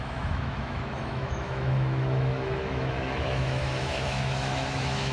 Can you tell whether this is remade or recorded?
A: remade